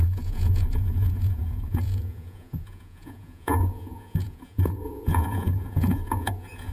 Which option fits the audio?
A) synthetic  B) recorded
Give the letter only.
A